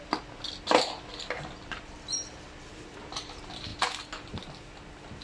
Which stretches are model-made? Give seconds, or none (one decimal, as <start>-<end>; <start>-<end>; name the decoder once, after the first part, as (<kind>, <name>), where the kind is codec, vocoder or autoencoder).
none